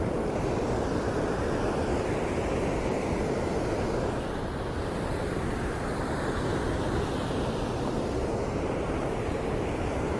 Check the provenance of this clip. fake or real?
real